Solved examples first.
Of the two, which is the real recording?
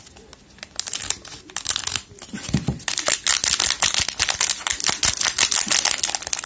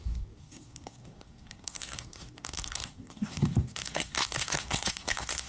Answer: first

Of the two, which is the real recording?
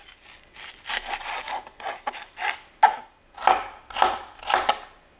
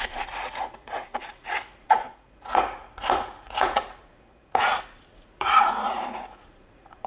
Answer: first